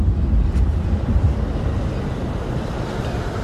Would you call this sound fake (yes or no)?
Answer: no